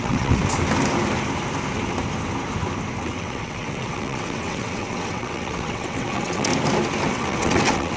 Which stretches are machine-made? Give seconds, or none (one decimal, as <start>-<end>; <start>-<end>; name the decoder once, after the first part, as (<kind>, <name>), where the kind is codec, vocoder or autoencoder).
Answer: 0.0-0.4 (vocoder, WaveNeXt); 3.0-6.5; 7.1-8.0